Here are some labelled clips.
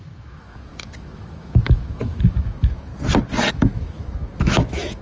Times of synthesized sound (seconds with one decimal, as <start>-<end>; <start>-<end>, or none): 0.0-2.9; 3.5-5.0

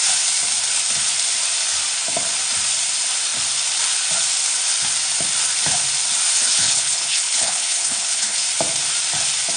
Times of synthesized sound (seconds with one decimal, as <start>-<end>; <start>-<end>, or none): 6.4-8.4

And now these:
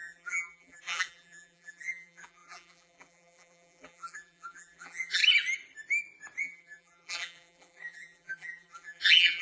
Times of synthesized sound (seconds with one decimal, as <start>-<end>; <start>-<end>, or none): 0.0-5.2; 6.4-9.4